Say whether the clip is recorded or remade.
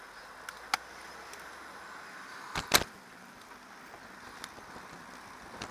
recorded